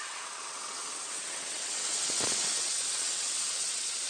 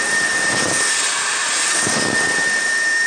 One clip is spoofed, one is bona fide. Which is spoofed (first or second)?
first